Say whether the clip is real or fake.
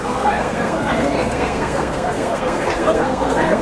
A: fake